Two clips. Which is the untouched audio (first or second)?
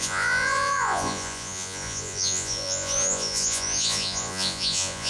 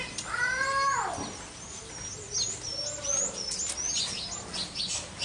second